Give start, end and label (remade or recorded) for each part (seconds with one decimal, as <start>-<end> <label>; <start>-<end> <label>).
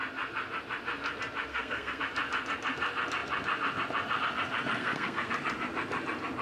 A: 0.0-1.5 recorded; 1.5-2.0 remade; 2.0-4.8 recorded; 4.8-5.3 remade; 5.3-6.4 recorded